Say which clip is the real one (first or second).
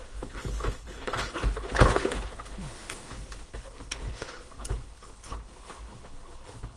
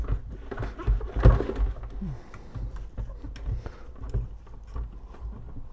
second